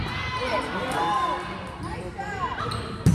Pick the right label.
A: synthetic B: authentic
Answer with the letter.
B